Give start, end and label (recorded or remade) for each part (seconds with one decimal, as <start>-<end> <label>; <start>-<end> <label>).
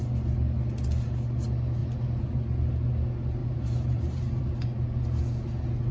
0.0-3.4 recorded; 3.4-4.4 remade; 4.4-5.9 recorded